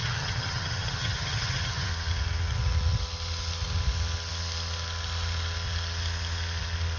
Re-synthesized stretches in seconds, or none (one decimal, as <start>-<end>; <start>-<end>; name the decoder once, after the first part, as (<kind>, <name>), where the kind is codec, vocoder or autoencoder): 0.0-1.9 (vocoder, HiFi-GAN)